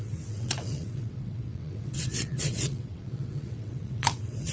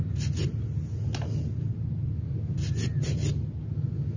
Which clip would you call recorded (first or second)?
second